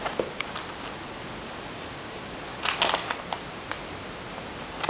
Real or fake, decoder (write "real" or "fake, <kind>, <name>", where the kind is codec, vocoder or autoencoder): real